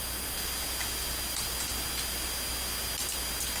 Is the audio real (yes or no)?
yes